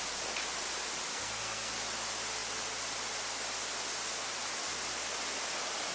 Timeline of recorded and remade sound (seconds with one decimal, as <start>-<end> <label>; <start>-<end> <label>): 0.0-1.1 recorded; 1.1-1.7 remade; 1.7-5.9 recorded